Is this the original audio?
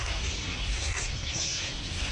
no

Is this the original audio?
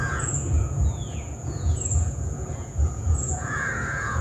no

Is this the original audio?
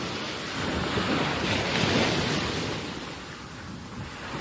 yes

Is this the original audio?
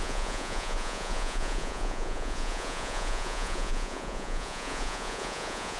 no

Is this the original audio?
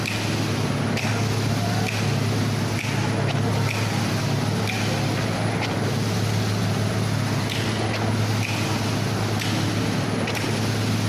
yes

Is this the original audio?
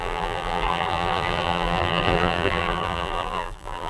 no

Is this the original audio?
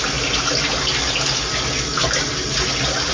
yes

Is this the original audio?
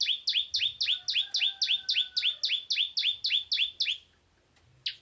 yes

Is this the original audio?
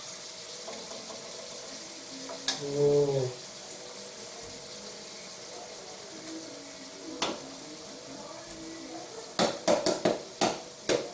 yes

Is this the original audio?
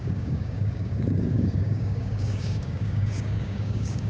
no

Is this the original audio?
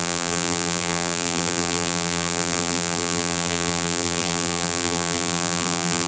no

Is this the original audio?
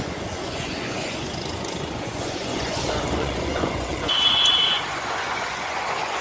no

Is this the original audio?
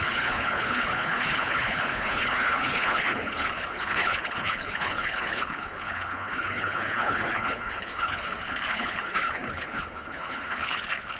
no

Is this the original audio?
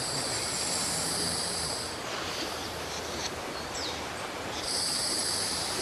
no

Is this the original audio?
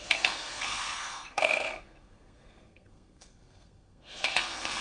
no